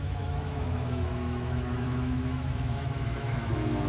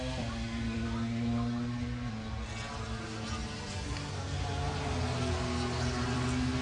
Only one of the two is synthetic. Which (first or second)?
first